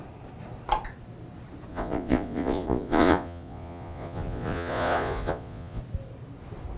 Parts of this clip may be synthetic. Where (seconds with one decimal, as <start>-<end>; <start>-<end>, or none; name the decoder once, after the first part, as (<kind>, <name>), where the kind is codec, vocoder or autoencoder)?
1.7-5.8 (vocoder, Vocos)